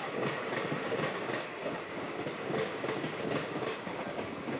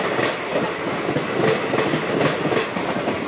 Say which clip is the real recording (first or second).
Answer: second